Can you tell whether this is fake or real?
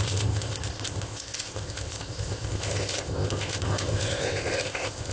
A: fake